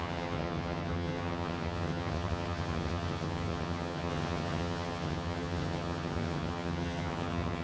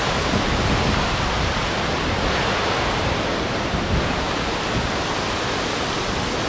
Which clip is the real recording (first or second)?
second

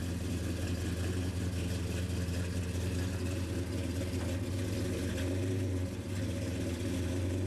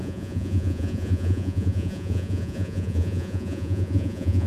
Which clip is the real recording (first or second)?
first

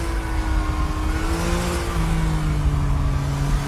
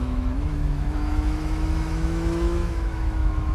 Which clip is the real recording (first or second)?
first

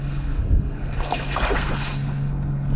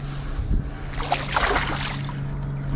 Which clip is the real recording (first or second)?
second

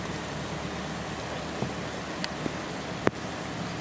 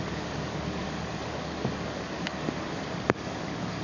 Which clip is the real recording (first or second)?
first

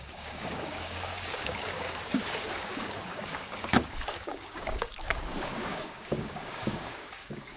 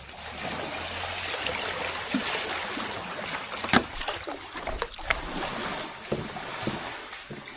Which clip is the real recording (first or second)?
second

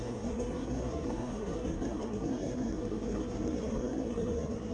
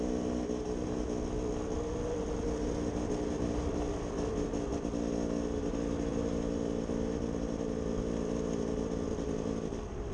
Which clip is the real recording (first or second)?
second